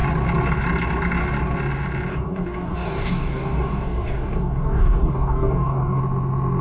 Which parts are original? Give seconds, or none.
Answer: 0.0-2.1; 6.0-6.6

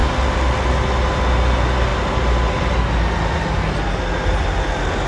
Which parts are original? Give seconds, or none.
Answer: 0.0-5.1

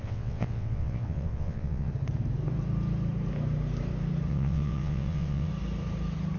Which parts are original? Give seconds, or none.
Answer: 1.9-4.3; 5.5-6.4